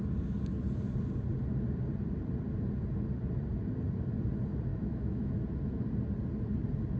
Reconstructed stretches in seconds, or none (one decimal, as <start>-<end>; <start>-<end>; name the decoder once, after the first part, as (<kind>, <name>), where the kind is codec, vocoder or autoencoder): 4.7-5.3 (autoencoder, DAC-VAE)